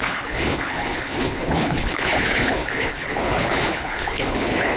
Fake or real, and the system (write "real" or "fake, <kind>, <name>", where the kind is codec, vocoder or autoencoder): fake, codec, HILCodec